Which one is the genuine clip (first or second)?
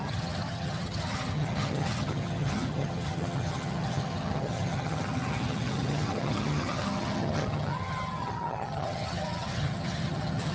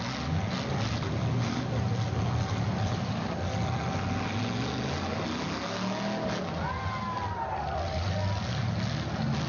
second